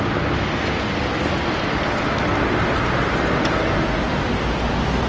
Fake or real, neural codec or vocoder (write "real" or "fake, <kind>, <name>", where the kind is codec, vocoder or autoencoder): real